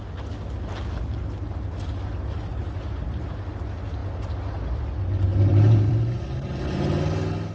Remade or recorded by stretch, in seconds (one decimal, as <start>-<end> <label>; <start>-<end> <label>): 0.0-2.5 recorded; 2.5-3.5 remade; 3.5-5.3 recorded; 5.3-6.5 remade; 6.5-7.5 recorded